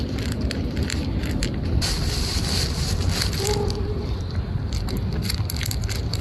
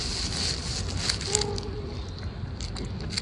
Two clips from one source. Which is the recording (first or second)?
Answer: second